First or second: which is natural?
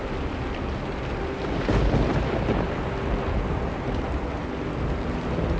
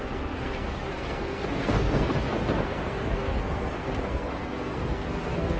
first